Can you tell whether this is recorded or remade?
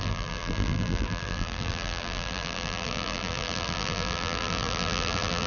remade